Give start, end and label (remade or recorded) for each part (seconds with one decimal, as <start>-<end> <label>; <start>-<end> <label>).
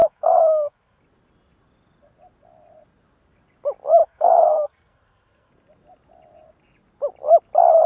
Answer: 0.0-1.0 remade; 1.0-4.0 recorded; 4.0-5.5 remade; 5.5-7.9 recorded